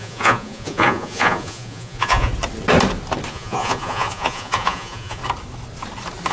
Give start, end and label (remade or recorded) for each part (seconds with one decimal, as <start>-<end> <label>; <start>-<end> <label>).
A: 0.0-2.3 remade; 2.3-3.3 recorded; 3.3-5.2 remade; 5.2-6.3 recorded